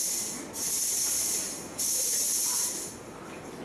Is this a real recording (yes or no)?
yes